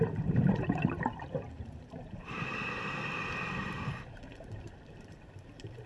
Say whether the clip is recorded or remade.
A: remade